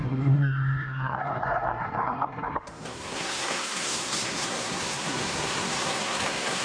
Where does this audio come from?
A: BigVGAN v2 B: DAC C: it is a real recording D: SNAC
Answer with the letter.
D